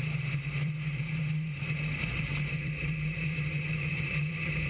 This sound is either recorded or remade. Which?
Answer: remade